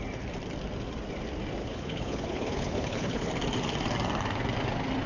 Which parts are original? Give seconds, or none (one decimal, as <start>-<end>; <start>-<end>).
0.0-1.6; 3.3-5.1